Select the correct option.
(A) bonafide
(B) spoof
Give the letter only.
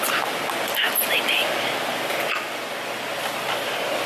A